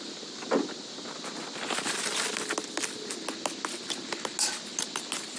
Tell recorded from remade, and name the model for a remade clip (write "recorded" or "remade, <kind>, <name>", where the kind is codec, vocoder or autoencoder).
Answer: recorded